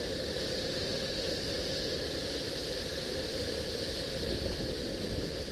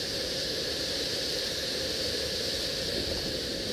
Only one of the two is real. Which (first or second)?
first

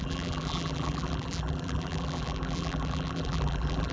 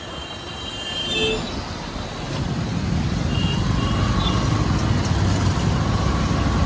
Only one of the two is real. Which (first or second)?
second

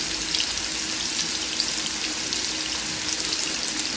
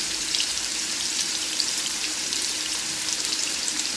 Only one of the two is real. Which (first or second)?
first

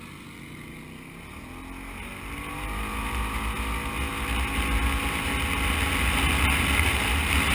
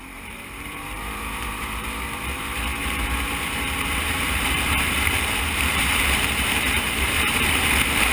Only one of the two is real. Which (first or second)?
first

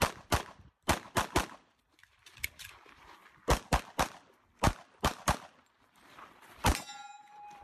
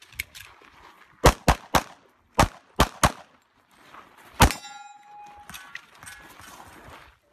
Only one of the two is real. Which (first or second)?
second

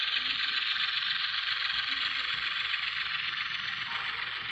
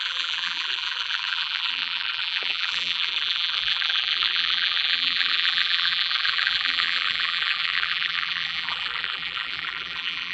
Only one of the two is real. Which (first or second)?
first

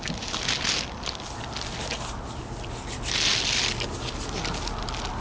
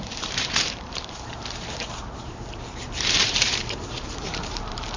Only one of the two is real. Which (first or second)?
first